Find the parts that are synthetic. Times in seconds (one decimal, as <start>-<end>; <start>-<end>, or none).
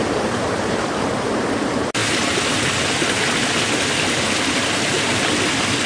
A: 0.0-0.9